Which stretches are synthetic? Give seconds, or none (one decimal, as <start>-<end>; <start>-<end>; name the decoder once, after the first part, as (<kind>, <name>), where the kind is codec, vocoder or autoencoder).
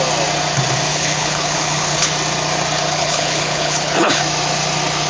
0.9-2.1 (codec, HILCodec); 2.9-4.2